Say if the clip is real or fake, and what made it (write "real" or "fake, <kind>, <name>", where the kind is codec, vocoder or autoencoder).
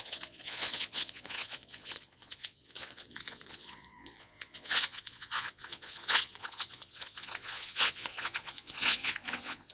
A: fake, vocoder, Vocos